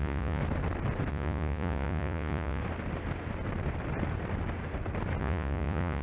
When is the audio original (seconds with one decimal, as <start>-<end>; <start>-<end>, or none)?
0.4-1.1; 2.6-5.2